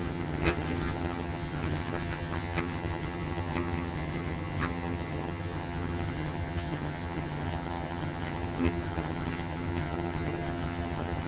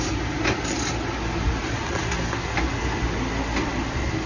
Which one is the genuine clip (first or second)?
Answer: second